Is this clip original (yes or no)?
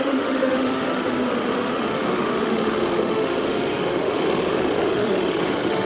no